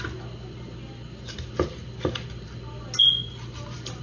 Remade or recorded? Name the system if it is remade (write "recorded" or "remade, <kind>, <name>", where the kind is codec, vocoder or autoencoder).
recorded